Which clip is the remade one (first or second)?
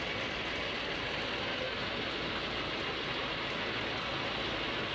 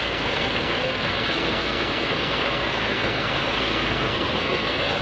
second